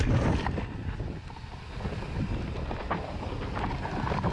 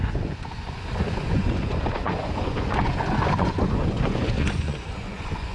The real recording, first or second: first